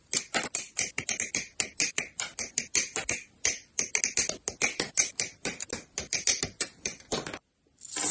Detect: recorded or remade recorded